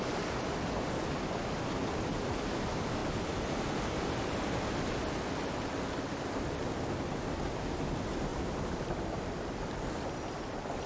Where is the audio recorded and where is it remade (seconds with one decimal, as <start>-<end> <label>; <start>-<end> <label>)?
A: 0.0-8.3 recorded; 8.3-9.2 remade; 9.2-10.9 recorded